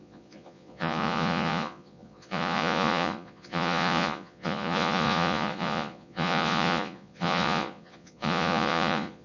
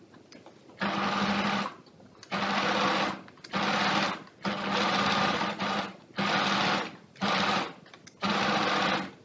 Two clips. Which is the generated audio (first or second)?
first